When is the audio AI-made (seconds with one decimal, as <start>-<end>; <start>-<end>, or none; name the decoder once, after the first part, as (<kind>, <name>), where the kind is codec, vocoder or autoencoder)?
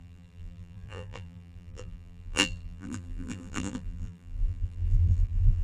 0.0-5.6 (vocoder, BigVGAN v2)